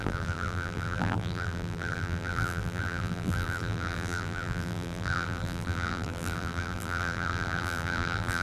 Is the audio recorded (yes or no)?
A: no